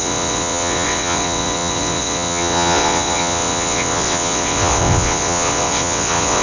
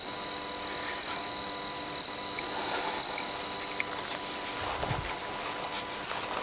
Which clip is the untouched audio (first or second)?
second